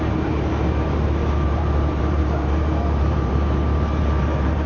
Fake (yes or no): yes